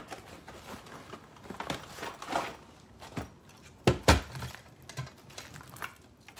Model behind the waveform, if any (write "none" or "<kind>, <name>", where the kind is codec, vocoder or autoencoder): none